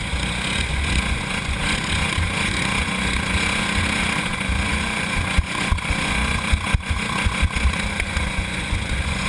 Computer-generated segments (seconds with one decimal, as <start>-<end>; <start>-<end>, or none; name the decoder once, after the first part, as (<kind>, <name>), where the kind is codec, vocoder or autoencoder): 0.0-9.3 (vocoder, Vocos)